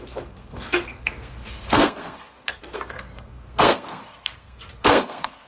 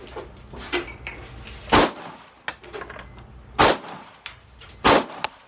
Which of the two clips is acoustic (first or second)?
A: second